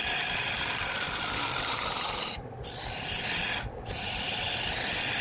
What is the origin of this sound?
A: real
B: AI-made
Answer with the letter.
A